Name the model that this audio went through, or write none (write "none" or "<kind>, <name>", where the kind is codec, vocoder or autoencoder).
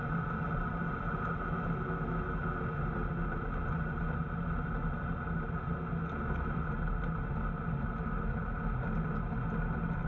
none